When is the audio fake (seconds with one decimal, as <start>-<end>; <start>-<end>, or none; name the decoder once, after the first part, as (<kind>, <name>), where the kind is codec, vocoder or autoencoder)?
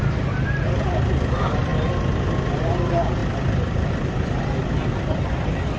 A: 0.0-1.7 (vocoder, BigVGAN v2); 2.6-5.8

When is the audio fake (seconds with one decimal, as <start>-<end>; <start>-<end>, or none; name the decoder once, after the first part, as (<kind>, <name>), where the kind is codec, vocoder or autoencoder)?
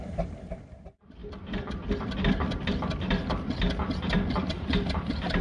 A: 1.2-1.7 (vocoder, BigVGAN v2)